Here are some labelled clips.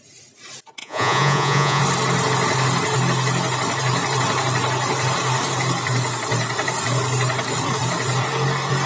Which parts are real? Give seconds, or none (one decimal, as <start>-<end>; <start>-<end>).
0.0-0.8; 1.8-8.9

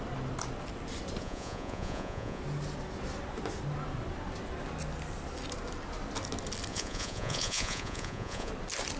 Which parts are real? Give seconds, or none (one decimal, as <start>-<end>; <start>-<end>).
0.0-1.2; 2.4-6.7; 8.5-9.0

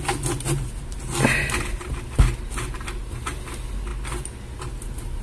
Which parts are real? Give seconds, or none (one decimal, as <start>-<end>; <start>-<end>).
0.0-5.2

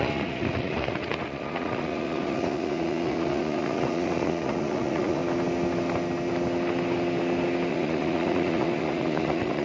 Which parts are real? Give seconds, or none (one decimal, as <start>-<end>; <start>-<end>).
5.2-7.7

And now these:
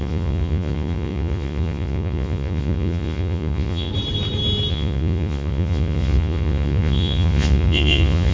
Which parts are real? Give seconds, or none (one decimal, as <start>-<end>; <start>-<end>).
3.9-4.7

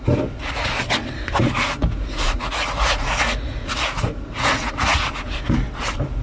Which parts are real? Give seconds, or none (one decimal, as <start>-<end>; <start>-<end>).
0.0-1.4; 5.1-6.2

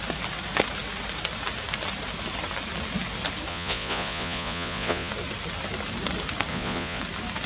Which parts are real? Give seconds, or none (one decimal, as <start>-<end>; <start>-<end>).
0.0-3.5; 5.1-6.5; 7.0-7.5